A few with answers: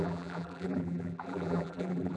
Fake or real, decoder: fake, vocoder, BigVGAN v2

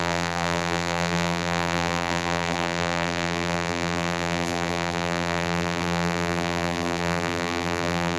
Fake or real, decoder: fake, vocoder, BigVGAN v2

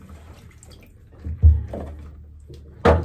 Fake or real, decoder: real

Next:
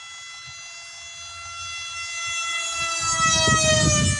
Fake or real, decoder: real